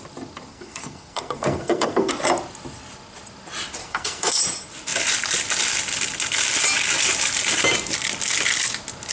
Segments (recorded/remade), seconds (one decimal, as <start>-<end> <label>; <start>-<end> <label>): 0.0-0.5 recorded; 0.5-2.1 remade; 2.1-3.8 recorded; 3.8-4.4 remade; 4.4-9.1 recorded